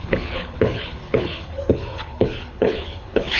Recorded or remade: remade